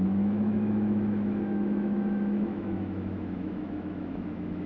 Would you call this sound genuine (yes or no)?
no